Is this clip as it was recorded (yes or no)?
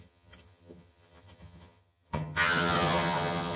no